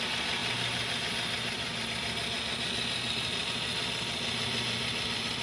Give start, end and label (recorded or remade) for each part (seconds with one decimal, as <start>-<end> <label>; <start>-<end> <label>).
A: 0.0-5.4 recorded